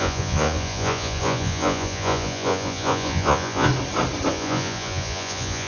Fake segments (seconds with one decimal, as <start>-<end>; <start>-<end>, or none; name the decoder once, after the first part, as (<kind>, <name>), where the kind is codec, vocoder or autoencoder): 0.0-3.7 (vocoder, Vocos); 4.3-5.7